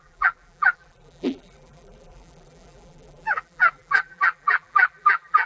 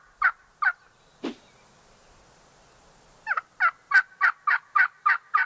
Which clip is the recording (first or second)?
second